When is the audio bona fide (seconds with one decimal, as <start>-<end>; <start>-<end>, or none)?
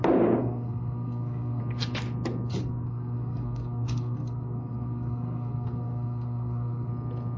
0.0-0.4; 1.6-2.5; 6.9-7.4